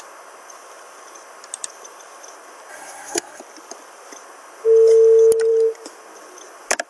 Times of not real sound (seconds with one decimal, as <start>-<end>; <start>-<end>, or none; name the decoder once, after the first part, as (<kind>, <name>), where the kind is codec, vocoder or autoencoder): 2.7-3.4 (codec, SNAC)